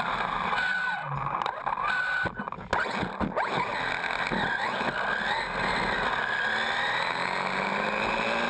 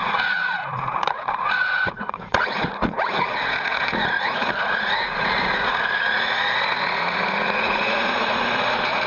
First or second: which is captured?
first